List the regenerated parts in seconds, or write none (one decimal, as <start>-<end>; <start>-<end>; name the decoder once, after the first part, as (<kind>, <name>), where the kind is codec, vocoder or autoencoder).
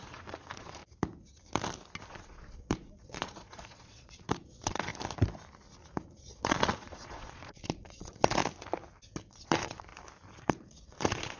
0.0-0.8 (vocoder, Vocos); 2.1-4.9; 6.2-8.4; 9.3-9.9; 10.4-11.4